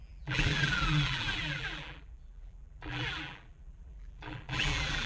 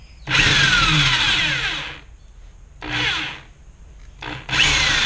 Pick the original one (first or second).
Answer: second